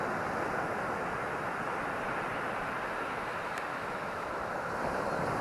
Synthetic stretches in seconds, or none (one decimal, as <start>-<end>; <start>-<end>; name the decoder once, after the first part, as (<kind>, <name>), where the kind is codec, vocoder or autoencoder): 3.7-4.7 (autoencoder, DAC-VAE)